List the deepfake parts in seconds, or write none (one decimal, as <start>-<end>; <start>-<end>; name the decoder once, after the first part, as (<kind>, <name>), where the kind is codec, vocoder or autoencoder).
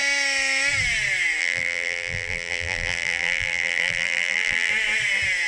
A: 1.4-4.7 (vocoder, BigVGAN v2)